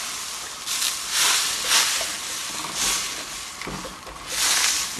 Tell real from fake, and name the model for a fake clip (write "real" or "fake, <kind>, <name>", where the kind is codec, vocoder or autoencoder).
real